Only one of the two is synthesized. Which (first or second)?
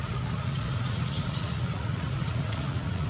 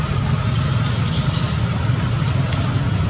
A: first